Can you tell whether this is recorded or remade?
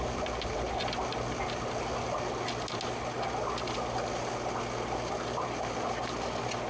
recorded